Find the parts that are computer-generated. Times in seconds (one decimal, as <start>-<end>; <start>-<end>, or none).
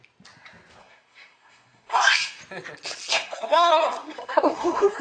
0.8-2.4; 3.1-5.0